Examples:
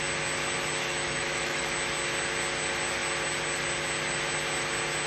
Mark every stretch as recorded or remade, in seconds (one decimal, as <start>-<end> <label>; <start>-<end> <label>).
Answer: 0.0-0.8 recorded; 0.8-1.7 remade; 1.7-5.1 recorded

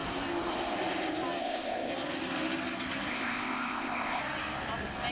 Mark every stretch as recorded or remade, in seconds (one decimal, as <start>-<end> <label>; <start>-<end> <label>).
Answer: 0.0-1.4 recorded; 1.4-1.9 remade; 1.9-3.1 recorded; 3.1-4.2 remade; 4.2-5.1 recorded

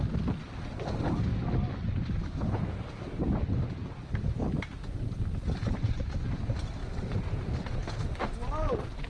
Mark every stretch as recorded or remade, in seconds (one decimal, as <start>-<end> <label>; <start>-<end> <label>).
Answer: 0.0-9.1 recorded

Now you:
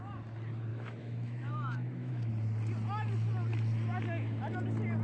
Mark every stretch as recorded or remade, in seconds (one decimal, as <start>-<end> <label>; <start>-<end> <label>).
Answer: 0.0-0.7 recorded; 0.7-2.3 remade; 2.3-5.0 recorded

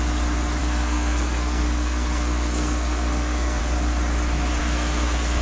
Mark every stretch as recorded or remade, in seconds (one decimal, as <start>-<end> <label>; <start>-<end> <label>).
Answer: 0.0-0.6 recorded; 0.6-3.6 remade; 3.6-4.6 recorded; 4.6-5.4 remade